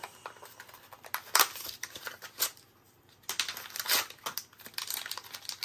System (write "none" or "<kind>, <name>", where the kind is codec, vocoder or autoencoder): none